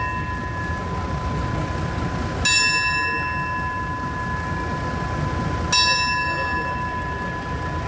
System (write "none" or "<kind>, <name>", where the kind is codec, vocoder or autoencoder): none